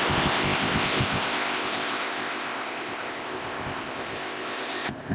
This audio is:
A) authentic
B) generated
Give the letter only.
B